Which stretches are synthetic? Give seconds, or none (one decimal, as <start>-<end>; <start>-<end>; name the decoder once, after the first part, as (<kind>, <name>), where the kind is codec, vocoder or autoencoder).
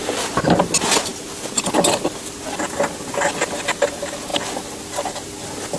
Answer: none